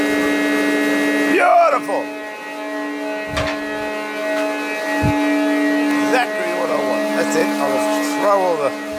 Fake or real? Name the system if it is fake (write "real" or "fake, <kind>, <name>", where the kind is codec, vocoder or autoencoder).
real